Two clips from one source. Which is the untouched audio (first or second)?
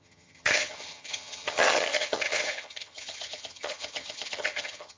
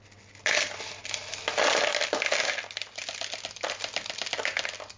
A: second